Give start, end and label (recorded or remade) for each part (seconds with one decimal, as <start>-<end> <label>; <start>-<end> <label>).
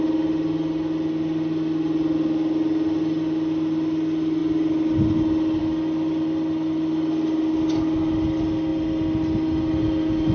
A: 0.0-10.3 recorded